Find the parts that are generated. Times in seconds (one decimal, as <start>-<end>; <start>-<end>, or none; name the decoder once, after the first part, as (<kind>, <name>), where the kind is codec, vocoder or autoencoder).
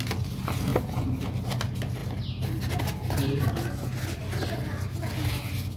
none